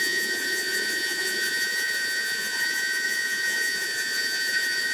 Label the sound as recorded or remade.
remade